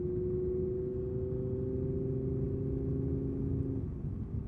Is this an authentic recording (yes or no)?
yes